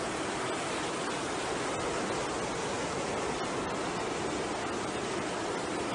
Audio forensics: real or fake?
real